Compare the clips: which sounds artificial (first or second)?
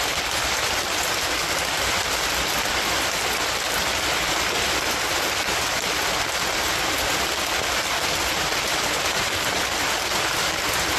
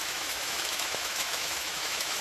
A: second